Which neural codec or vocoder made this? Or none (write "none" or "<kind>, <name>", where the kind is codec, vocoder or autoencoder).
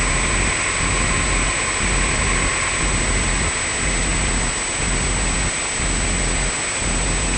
none